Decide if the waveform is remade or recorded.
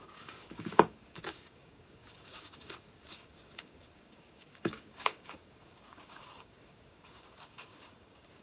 remade